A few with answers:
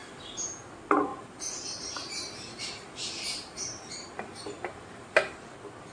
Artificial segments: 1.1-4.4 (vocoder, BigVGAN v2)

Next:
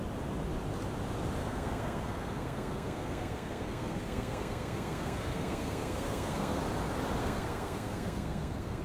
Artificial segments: 1.4-6.6 (codec, SNAC); 7.2-8.8

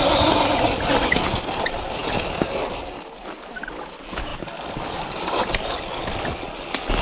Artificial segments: 4.3-5.8 (vocoder, BigVGAN v2)